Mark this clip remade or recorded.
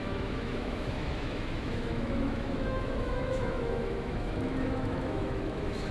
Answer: remade